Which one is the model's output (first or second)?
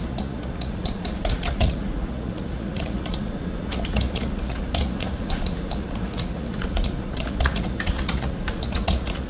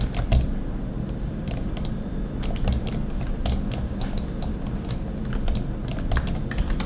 first